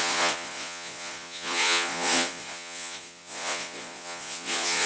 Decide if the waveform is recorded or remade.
remade